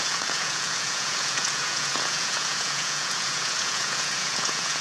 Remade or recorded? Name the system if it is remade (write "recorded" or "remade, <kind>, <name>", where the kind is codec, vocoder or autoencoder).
remade, vocoder, Vocos